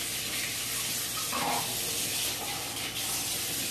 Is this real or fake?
real